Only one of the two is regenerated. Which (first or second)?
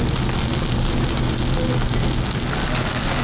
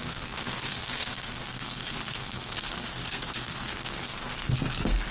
second